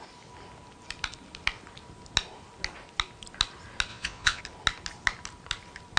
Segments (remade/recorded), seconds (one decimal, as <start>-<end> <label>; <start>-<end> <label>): 0.0-3.9 recorded; 3.9-4.4 remade; 4.4-6.0 recorded